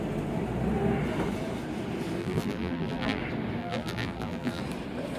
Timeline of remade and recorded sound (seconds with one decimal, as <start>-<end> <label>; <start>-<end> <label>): 0.0-2.2 recorded; 2.2-3.2 remade; 3.2-3.6 recorded; 3.6-4.6 remade; 4.6-5.2 recorded